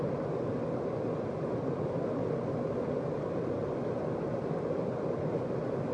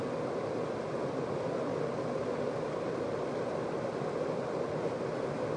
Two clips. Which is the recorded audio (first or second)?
second